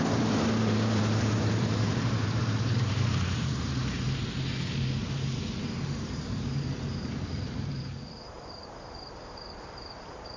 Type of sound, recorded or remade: remade